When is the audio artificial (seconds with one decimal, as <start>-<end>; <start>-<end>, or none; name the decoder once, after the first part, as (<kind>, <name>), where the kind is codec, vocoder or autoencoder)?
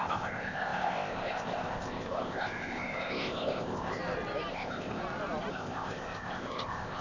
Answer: 0.0-4.0 (codec, ZipCodec); 4.5-5.0; 5.5-7.0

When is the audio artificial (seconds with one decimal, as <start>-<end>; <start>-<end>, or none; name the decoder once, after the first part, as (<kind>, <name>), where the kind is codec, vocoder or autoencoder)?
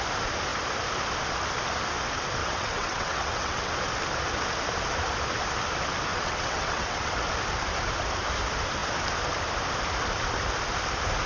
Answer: 2.4-3.7 (vocoder, WaveNeXt); 6.1-7.1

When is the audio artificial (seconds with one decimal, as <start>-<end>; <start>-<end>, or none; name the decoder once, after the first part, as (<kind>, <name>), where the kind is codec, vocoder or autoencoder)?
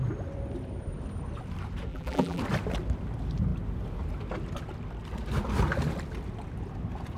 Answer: 1.9-2.4 (vocoder, BigVGAN v2)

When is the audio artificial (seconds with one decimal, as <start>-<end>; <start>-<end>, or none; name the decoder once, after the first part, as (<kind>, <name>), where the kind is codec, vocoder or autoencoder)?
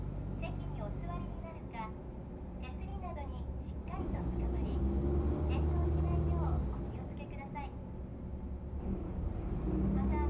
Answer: 2.9-4.8 (vocoder, BigVGAN v2); 8.1-9.6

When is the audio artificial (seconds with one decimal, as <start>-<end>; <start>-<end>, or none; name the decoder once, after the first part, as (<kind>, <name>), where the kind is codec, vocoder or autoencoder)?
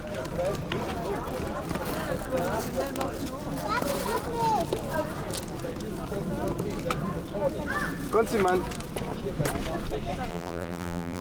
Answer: 10.3-11.2 (vocoder, BigVGAN v2)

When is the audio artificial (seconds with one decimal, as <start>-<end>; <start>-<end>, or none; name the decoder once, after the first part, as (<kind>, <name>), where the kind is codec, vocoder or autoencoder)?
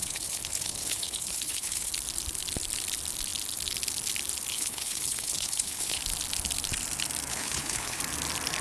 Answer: 0.0-1.9 (codec, HILCodec); 4.5-6.0; 7.3-8.0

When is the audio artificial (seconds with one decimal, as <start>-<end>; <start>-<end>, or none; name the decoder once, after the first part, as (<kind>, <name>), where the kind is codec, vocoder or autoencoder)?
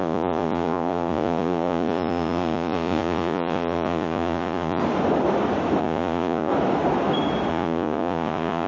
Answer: 0.0-4.8 (vocoder, Vocos); 5.8-6.5; 7.5-8.7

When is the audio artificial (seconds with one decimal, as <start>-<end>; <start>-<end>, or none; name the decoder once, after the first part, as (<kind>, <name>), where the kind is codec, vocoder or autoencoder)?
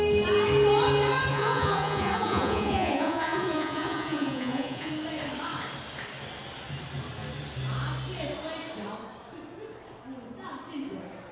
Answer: 1.3-4.9 (vocoder, Vocos)